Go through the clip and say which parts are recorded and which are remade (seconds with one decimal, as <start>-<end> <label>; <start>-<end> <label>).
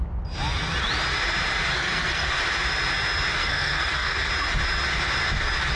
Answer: 0.0-1.7 recorded; 1.7-2.4 remade; 2.4-3.4 recorded; 3.4-4.3 remade; 4.3-5.8 recorded